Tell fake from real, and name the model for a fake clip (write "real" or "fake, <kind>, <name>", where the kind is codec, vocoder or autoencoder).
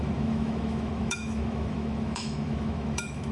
fake, autoencoder, DAC-VAE